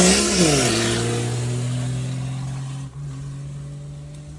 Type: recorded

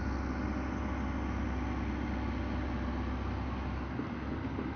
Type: recorded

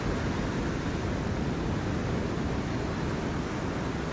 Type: recorded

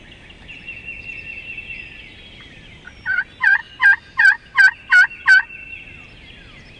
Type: recorded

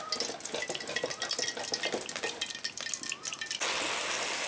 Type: recorded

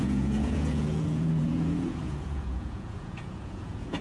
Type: remade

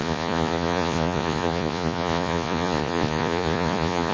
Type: remade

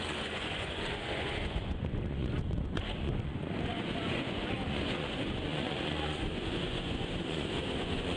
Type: remade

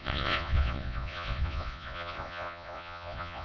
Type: remade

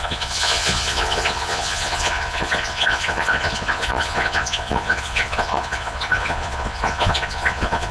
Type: remade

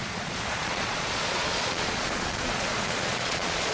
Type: remade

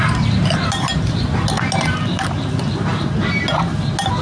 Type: recorded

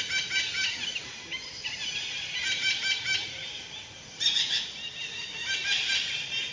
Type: recorded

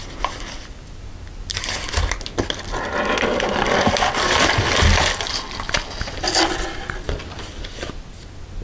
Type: recorded